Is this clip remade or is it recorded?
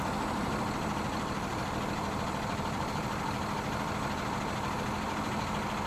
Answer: recorded